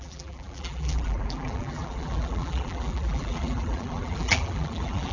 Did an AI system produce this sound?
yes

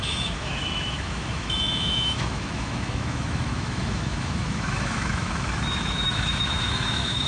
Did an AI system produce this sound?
yes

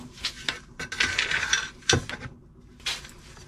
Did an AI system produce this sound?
no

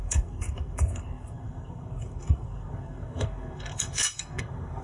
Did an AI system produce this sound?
yes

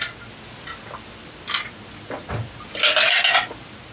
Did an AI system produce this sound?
no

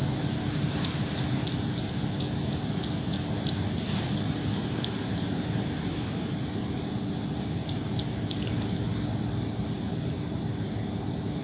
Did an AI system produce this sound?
no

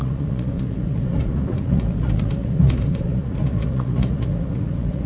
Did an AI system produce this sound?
yes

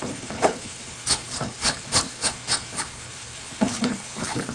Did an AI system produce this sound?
yes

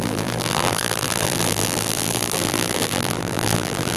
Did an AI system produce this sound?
yes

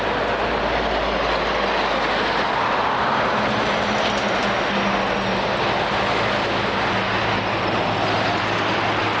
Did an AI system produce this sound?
no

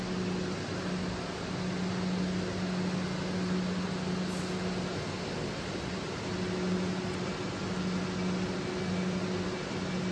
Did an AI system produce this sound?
no